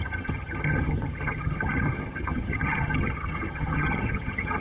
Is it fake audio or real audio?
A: fake